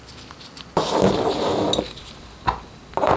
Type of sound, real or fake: real